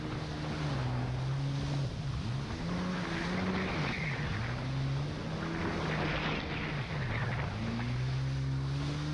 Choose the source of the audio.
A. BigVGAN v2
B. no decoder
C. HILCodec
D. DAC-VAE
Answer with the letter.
B